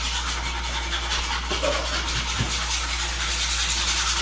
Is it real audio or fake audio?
real